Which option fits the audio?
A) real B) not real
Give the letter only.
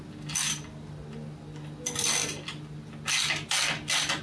A